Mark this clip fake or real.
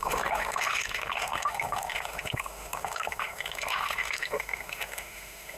fake